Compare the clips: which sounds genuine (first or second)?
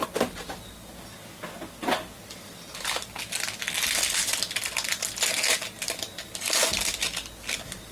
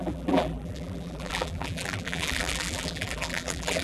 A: first